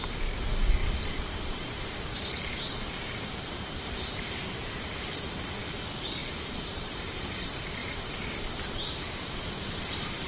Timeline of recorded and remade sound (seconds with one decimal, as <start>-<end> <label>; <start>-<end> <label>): 0.0-0.8 recorded; 0.8-4.4 remade; 4.4-6.2 recorded; 6.2-7.2 remade; 7.2-7.8 recorded; 7.8-10.3 remade

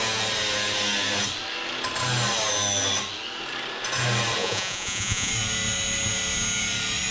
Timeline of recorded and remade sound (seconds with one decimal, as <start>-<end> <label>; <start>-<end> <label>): 0.0-4.4 recorded; 4.4-5.3 remade; 5.3-7.1 recorded

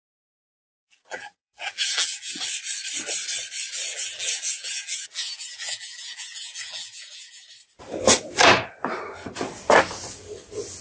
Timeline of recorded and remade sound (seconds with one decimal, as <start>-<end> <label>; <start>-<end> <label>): 0.0-0.7 recorded; 0.7-2.4 remade; 2.4-3.9 recorded; 3.9-7.4 remade; 7.4-10.8 recorded

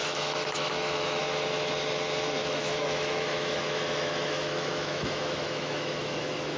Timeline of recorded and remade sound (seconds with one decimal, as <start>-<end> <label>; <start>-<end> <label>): 0.0-1.2 remade; 1.2-2.4 recorded; 2.4-6.6 remade